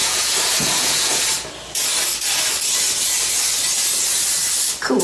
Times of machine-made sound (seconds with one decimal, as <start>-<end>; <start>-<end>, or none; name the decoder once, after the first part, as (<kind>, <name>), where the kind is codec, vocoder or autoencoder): 0.0-1.2 (vocoder, Vocos)